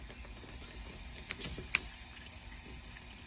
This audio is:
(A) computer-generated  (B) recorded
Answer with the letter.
B